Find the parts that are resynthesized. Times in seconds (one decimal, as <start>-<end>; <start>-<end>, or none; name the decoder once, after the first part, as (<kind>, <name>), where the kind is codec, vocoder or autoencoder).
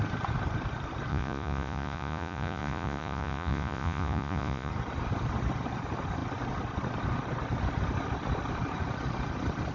1.1-4.7 (vocoder, Vocos)